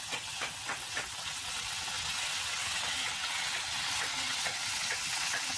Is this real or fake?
fake